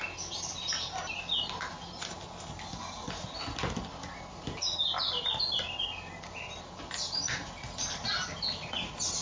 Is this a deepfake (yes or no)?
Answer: no